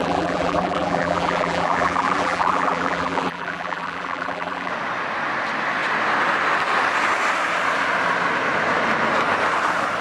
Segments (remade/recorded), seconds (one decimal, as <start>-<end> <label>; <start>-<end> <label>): 0.0-4.7 remade; 4.7-10.0 recorded